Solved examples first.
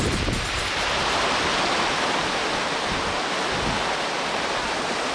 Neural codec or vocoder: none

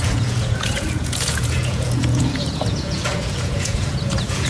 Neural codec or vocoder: vocoder, Vocos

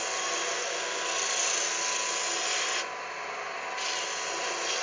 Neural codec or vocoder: none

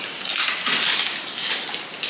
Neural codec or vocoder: none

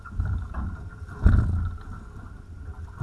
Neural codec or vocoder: none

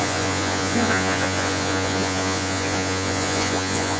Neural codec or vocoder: vocoder, Vocos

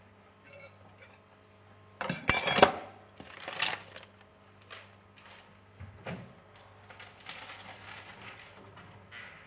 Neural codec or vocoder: none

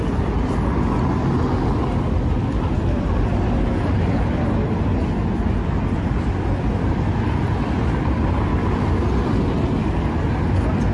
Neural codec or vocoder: none